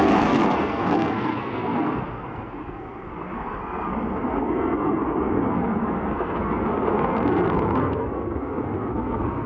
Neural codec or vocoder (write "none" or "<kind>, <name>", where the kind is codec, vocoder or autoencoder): codec, SNAC